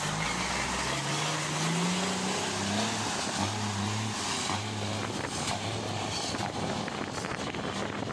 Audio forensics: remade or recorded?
recorded